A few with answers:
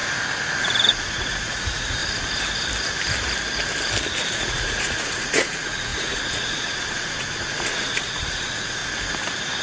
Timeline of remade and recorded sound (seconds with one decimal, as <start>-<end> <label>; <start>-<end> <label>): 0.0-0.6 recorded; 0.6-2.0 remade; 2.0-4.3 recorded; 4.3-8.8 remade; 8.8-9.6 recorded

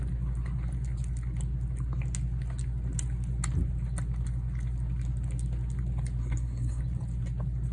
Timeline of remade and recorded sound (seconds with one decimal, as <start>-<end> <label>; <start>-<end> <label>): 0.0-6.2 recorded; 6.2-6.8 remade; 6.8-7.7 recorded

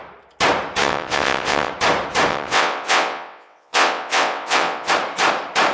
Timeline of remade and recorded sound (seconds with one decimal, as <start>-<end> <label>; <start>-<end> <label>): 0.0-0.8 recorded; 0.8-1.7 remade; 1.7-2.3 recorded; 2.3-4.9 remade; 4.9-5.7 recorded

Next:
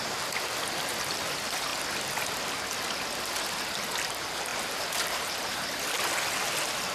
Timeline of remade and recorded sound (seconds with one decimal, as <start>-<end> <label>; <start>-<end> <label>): 0.0-4.5 recorded; 4.5-5.8 remade; 5.8-6.9 recorded

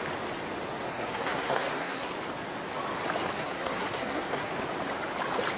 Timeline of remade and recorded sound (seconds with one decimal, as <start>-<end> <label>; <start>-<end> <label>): 0.0-0.9 recorded; 0.9-2.1 remade; 2.1-3.4 recorded; 3.4-4.5 remade; 4.5-5.6 recorded

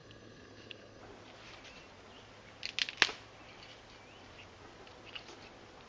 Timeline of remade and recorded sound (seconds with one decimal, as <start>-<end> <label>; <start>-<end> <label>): 0.0-1.0 remade; 1.0-5.9 recorded